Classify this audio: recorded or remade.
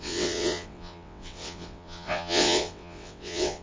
remade